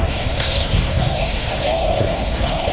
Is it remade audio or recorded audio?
remade